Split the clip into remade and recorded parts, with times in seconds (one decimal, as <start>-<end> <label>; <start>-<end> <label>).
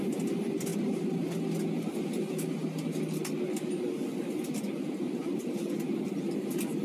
0.0-5.2 recorded; 5.2-5.8 remade; 5.8-6.8 recorded